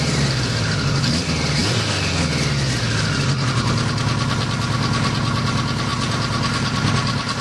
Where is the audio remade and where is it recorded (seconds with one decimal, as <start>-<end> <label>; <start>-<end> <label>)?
0.0-7.4 recorded